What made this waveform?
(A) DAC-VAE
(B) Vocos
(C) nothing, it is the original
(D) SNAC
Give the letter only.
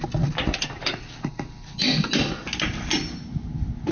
C